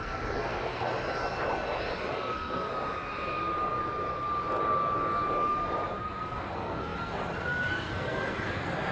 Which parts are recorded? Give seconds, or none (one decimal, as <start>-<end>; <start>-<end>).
0.9-2.1; 2.7-6.0